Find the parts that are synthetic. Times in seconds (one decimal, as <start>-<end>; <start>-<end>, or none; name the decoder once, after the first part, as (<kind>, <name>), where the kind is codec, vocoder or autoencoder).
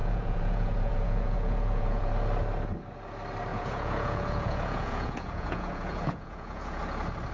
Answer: 0.0-2.1 (vocoder, Vocos); 3.5-6.8